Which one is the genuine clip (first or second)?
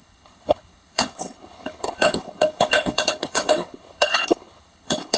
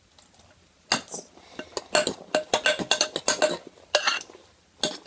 second